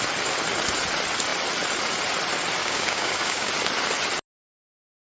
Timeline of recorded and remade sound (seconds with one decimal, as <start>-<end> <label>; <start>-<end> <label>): 0.0-2.6 recorded; 2.6-3.5 remade; 3.5-5.0 recorded